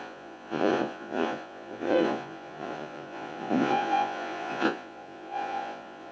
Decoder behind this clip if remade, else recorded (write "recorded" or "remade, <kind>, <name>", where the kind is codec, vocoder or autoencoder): remade, vocoder, Vocos